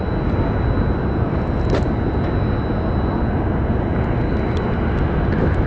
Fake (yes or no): no